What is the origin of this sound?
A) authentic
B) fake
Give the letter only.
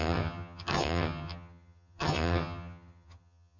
B